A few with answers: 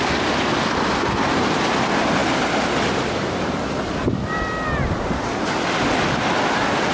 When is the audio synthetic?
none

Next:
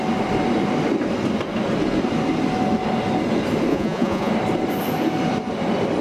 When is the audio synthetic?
3.7-4.3

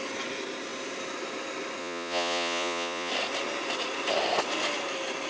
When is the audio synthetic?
1.8-3.1

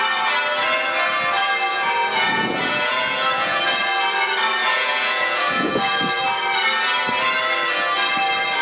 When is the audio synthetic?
1.7-3.6; 4.6-5.7

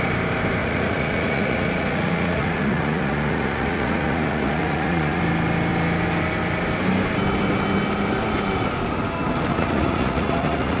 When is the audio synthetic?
0.6-5.2; 9.5-10.8

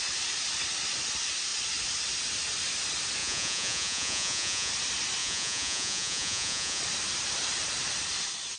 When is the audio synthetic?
3.2-4.7; 5.2-6.8